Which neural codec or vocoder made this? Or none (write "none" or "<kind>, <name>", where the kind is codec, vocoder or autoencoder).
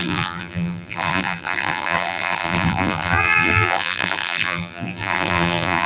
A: vocoder, BigVGAN v2